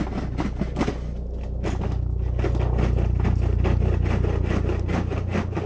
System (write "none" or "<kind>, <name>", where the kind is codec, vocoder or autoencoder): none